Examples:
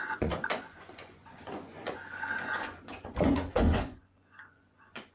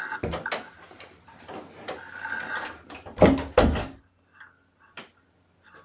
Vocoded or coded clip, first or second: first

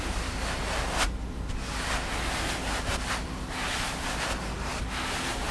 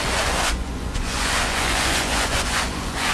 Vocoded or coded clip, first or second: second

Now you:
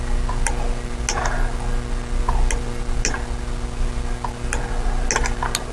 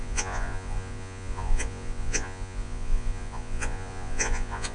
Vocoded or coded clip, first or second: second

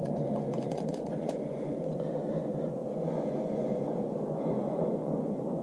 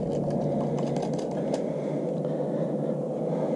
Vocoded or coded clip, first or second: first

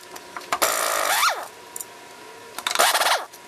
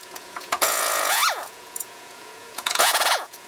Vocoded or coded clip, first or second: second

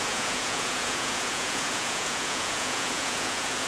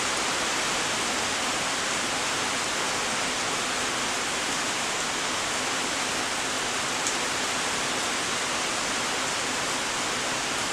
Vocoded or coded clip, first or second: first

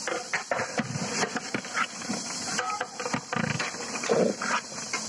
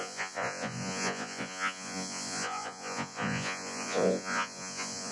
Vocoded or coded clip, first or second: second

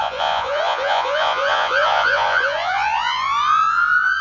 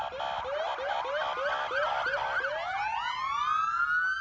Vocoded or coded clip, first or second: first